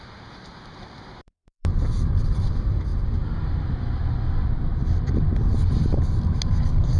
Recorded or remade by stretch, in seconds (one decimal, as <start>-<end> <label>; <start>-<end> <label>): 0.0-2.9 remade; 2.9-3.7 recorded; 3.7-5.6 remade; 5.6-7.0 recorded

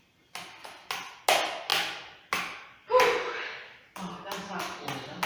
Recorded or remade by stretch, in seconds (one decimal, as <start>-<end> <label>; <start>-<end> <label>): 0.0-5.3 recorded

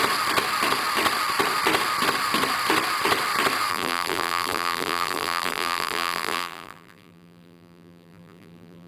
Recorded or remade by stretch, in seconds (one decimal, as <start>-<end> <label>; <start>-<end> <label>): 0.0-3.7 recorded; 3.7-8.9 remade

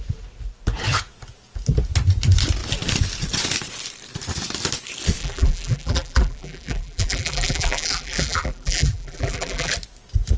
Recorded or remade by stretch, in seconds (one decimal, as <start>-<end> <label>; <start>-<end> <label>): 0.0-5.2 recorded; 5.2-9.7 remade; 9.7-10.4 recorded

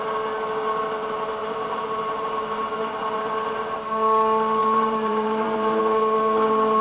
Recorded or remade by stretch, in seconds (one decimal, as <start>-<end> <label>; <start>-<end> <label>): 0.0-1.4 recorded; 1.4-3.2 remade; 3.2-4.6 recorded; 4.6-5.8 remade; 5.8-6.8 recorded

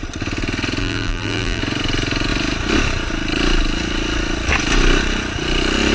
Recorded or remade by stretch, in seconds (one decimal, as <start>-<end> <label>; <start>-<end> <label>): 0.0-0.8 recorded; 0.8-1.6 remade; 1.6-5.9 recorded

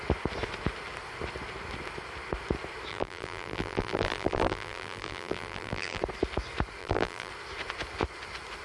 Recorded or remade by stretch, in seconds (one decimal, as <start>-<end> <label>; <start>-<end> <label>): 0.0-2.9 recorded; 2.9-6.0 remade; 6.0-6.8 recorded; 6.8-7.3 remade; 7.3-8.6 recorded

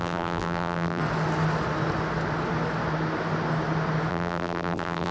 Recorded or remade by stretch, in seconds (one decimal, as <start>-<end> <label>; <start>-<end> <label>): 0.0-1.0 remade; 1.0-4.1 recorded; 4.1-5.1 remade